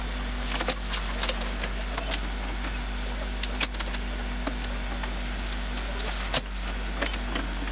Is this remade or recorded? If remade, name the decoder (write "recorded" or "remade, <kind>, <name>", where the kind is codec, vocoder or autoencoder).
recorded